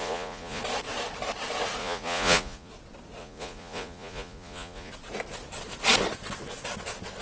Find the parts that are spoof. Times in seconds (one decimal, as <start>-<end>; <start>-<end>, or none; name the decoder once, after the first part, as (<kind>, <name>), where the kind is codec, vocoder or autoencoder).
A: 0.0-0.6 (vocoder, Vocos); 1.8-2.7; 3.2-4.9